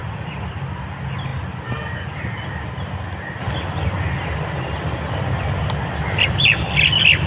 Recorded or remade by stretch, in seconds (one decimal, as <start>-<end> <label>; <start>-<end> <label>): 0.0-7.3 recorded